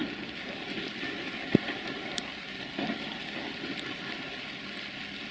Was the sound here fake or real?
real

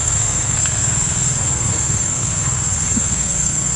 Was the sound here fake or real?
fake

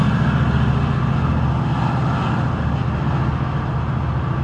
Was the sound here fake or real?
real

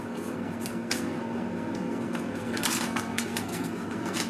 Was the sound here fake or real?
fake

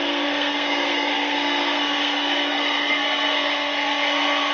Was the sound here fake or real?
fake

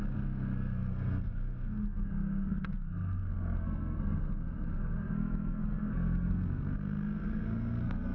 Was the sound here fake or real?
fake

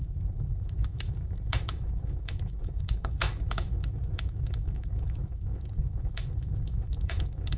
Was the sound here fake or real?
fake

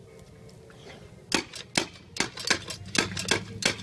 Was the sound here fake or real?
real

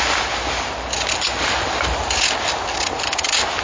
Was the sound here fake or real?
real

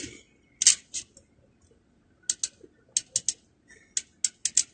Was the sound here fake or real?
real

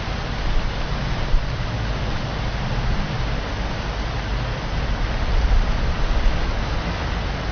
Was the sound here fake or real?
real